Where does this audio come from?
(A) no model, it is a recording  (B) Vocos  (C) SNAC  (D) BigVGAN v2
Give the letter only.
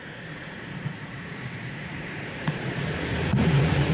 B